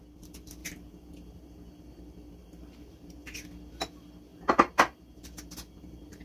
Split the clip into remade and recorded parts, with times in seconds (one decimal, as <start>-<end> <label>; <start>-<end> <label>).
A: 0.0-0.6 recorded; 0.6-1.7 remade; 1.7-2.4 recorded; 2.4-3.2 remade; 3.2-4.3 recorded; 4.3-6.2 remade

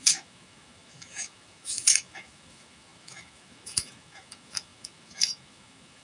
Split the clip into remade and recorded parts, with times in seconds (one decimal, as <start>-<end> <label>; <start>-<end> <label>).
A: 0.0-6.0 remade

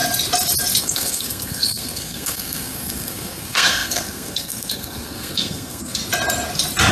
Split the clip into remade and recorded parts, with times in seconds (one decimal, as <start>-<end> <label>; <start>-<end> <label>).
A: 0.0-0.8 recorded; 0.8-6.0 remade; 6.0-6.9 recorded

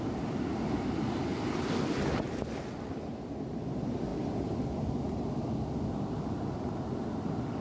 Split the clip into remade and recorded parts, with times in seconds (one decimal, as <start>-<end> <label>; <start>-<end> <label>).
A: 0.0-7.6 recorded

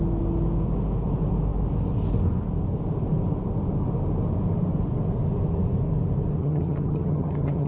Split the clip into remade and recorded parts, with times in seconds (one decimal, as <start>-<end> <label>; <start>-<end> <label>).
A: 0.0-6.4 recorded; 6.4-7.7 remade

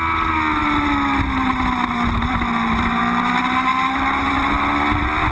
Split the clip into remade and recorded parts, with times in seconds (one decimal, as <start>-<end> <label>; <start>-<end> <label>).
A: 0.0-5.3 recorded

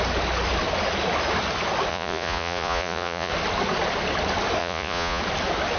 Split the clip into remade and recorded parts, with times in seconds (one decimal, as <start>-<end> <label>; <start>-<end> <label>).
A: 0.0-1.9 recorded; 1.9-3.3 remade; 3.3-4.6 recorded; 4.6-5.2 remade; 5.2-5.8 recorded